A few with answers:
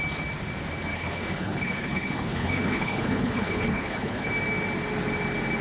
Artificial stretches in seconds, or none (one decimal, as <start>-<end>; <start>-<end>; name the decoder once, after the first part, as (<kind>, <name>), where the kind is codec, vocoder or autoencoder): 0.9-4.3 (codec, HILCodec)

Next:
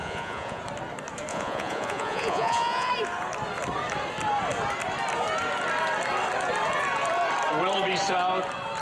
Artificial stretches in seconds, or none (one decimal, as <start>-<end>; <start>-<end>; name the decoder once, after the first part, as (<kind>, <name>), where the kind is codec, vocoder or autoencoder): 0.0-0.6 (vocoder, Vocos); 1.3-2.9

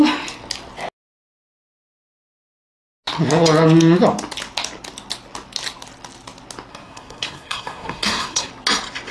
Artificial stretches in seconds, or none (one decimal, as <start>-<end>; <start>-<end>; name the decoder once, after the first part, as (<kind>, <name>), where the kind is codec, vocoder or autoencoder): 6.7-8.5 (codec, SNAC)

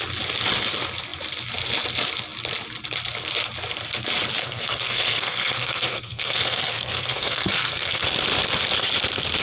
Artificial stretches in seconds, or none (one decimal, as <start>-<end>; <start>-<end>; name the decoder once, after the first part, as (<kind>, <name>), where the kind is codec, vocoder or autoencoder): 4.4-8.1 (codec, SNAC)